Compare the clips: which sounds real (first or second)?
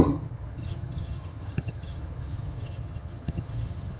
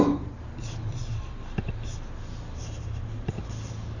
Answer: second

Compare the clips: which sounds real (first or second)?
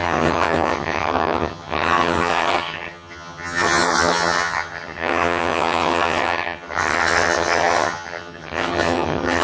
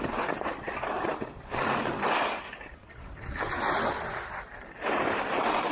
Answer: second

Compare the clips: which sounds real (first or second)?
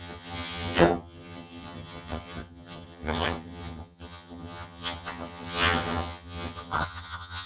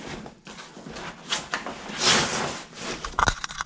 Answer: second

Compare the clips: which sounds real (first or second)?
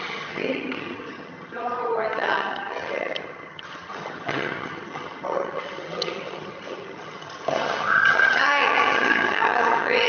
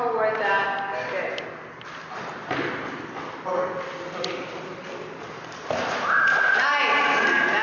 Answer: second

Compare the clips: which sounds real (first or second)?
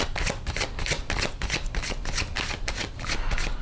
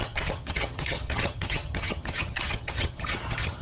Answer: first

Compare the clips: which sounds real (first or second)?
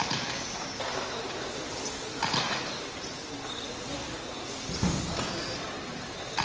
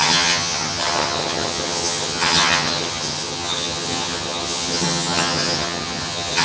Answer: first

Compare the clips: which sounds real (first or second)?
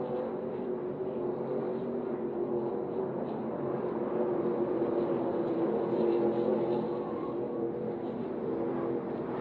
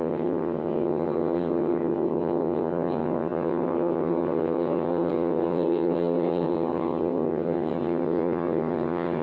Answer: first